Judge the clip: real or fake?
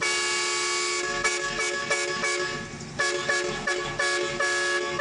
real